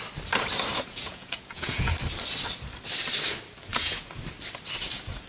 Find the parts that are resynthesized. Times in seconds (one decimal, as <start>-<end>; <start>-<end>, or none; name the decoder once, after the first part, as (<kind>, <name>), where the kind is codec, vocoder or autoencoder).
0.7-1.9 (vocoder, Vocos); 3.7-4.2